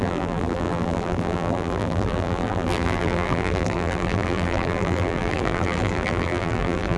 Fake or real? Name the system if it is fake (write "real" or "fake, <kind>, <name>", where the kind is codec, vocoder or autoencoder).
fake, vocoder, BigVGAN v2